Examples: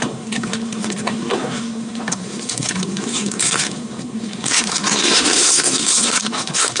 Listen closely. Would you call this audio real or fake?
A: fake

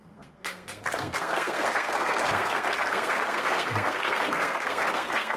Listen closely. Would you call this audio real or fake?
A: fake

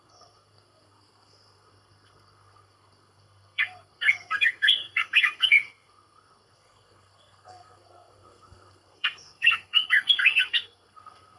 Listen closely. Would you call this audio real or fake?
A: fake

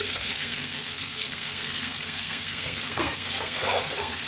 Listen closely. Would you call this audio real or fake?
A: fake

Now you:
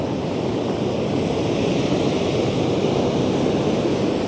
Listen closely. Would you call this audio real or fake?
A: real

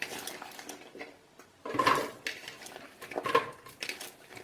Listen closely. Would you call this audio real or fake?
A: real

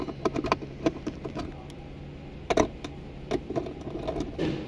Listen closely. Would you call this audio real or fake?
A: real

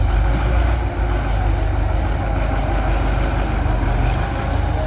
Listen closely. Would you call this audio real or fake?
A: real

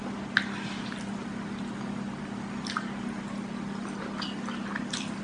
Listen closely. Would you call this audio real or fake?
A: real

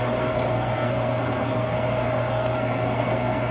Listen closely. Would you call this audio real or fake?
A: fake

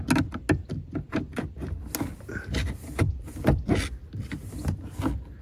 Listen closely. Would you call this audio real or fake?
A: real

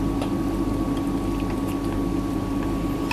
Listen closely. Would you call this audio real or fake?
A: real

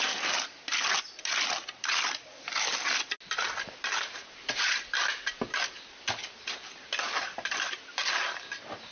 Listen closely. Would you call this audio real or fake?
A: real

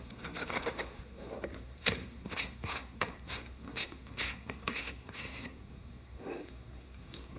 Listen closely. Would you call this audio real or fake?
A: fake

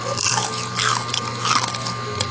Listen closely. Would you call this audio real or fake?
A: real